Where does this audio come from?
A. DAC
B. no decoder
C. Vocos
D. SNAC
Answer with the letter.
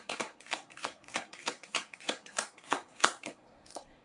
D